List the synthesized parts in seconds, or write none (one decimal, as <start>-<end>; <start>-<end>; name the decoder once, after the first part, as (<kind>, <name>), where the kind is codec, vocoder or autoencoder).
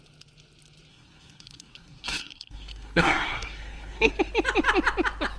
0.9-4.1 (codec, SNAC)